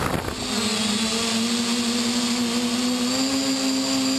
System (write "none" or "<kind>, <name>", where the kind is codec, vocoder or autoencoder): none